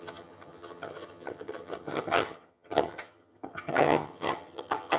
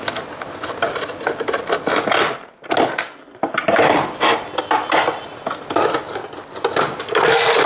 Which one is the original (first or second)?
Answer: second